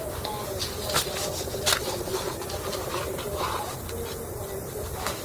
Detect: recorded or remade recorded